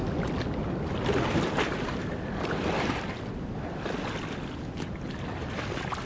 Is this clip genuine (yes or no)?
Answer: yes